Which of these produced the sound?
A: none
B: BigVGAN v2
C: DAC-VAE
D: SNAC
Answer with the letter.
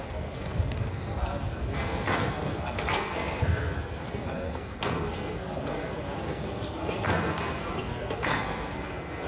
D